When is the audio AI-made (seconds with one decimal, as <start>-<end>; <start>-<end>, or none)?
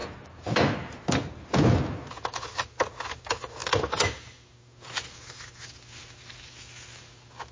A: none